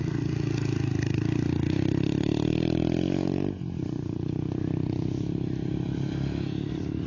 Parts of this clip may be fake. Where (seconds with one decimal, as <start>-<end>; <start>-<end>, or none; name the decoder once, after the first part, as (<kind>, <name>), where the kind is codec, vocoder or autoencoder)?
none